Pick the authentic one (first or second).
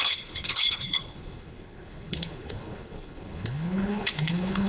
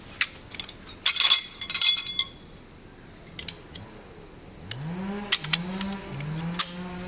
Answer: second